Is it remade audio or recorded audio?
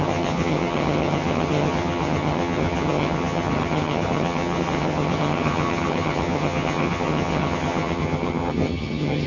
remade